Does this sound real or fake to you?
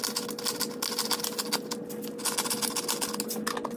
real